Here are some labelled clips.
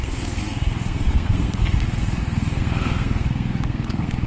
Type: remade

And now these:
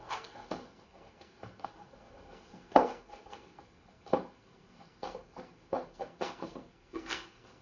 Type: remade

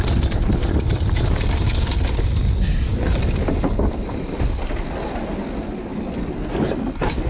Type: recorded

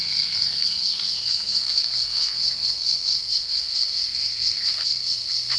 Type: remade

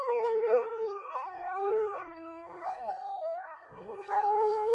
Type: remade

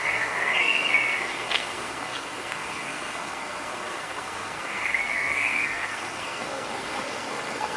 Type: remade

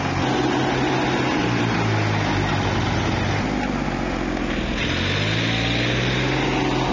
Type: recorded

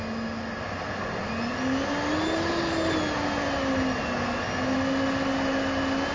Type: recorded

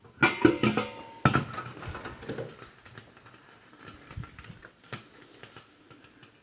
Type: recorded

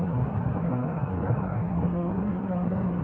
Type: remade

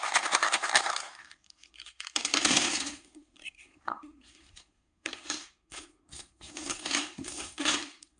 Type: remade